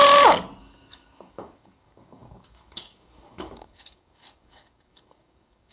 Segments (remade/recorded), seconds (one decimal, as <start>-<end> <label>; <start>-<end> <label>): 0.0-0.6 recorded; 0.6-5.7 remade